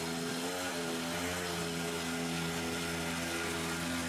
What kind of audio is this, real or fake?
real